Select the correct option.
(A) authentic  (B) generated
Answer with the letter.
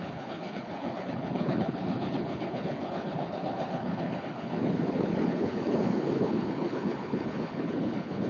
B